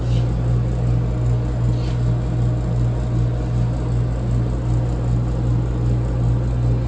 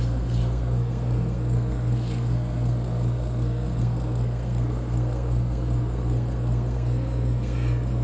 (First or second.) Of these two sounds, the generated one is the second